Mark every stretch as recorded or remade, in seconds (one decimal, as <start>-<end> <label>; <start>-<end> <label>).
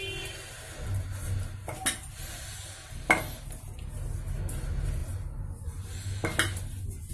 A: 0.0-7.1 recorded